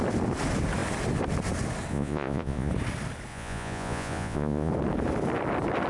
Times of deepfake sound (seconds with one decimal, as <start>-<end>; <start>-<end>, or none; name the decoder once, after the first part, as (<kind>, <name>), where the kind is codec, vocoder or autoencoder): 1.9-2.7 (vocoder, Vocos); 3.3-4.7